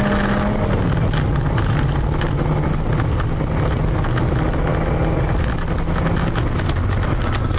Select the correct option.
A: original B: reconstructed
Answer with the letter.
A